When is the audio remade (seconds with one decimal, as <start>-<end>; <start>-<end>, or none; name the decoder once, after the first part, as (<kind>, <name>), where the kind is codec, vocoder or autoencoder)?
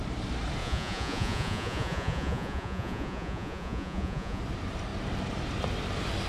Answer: 0.6-4.4 (vocoder, Vocos)